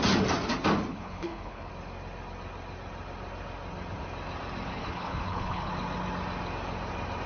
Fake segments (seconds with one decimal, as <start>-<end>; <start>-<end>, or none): 0.9-1.7; 4.7-5.7